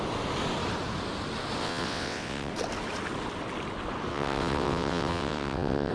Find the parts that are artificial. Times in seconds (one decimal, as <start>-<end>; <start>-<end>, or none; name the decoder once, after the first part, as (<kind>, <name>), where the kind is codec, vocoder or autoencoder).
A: 1.6-2.5 (vocoder, WaveNeXt); 4.1-5.9